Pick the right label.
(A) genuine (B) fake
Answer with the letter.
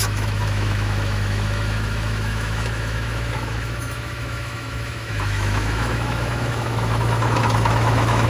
B